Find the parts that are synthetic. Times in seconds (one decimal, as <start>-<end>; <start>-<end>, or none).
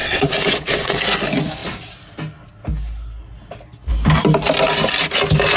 0.0-1.0